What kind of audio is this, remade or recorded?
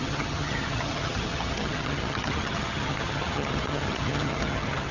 remade